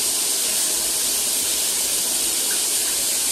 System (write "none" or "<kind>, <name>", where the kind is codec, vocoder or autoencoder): vocoder, BigVGAN v2